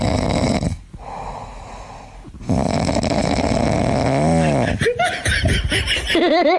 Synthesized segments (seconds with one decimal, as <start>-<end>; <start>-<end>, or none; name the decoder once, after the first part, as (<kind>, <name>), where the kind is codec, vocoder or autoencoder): none